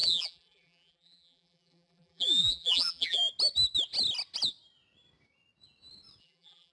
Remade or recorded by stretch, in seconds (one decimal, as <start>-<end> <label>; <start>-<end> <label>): 0.0-3.2 remade; 3.2-6.2 recorded; 6.2-6.7 remade